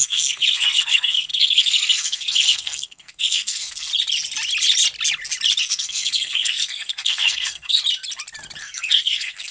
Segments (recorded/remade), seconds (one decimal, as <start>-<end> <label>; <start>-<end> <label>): 0.0-3.9 remade; 3.9-5.6 recorded; 5.6-7.8 remade; 7.8-8.6 recorded; 8.6-9.5 remade